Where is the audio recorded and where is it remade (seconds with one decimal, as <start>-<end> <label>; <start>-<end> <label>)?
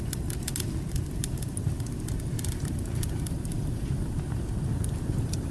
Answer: 0.0-5.5 recorded